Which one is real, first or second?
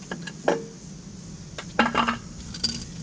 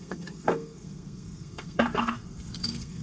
first